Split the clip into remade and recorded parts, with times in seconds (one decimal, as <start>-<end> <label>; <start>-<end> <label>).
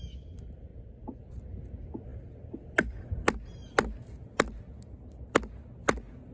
0.0-6.3 recorded